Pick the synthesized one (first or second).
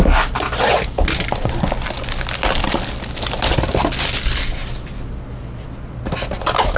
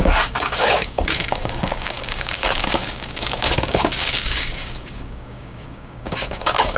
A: second